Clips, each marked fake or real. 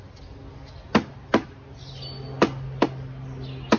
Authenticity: real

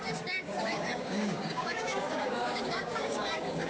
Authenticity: fake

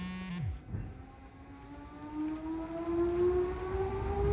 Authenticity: real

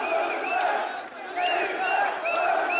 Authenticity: real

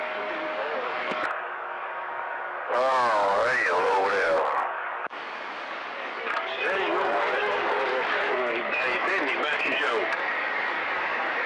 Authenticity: fake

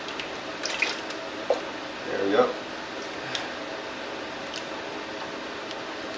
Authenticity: real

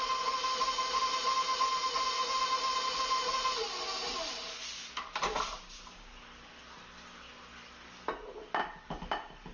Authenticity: real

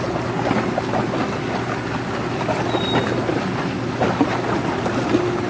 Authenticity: real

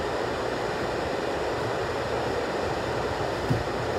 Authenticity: real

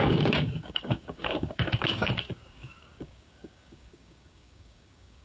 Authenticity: fake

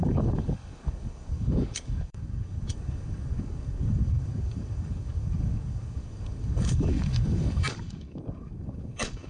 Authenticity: fake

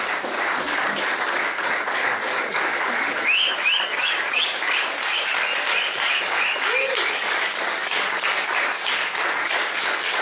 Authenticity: fake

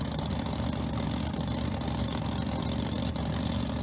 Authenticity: real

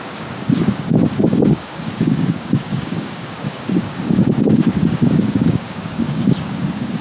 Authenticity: fake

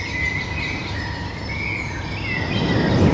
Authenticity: real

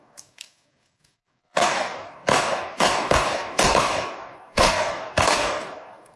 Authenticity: fake